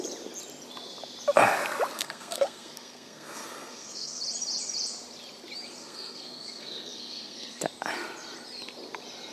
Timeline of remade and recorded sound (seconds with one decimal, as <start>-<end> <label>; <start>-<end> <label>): 0.0-1.9 recorded; 1.9-4.2 remade; 4.2-5.8 recorded; 5.8-7.6 remade; 7.6-9.3 recorded